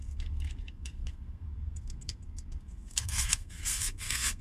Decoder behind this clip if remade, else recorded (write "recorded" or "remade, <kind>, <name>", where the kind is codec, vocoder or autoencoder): remade, codec, SNAC